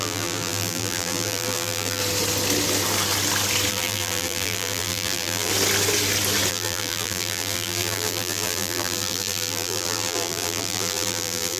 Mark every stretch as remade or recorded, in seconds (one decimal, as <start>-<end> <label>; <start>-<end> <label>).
0.0-2.0 remade; 2.0-3.7 recorded; 3.7-5.5 remade; 5.5-6.5 recorded; 6.5-11.6 remade